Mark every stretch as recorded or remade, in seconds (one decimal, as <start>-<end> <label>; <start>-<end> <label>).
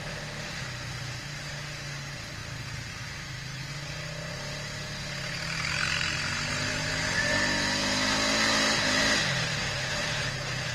0.0-10.7 recorded